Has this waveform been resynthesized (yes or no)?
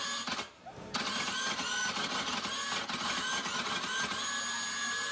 no